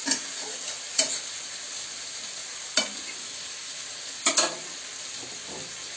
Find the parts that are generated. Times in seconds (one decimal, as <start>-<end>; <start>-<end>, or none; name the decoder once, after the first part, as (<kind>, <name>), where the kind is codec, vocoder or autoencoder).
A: 3.2-3.8 (autoencoder, DAC-VAE)